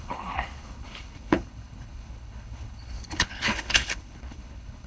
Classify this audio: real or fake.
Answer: fake